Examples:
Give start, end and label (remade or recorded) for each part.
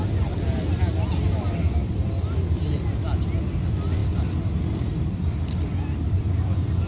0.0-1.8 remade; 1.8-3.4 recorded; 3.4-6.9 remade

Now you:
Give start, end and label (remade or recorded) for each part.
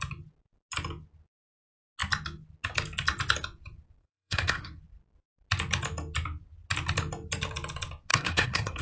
0.0-4.0 recorded; 4.0-4.8 remade; 4.8-8.1 recorded; 8.1-8.8 remade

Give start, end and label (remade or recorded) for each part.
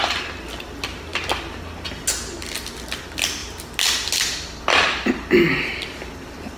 0.0-6.6 recorded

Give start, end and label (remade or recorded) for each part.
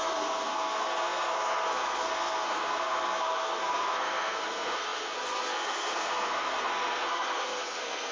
0.0-8.1 remade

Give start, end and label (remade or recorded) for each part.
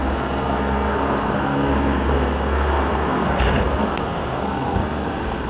0.0-5.5 remade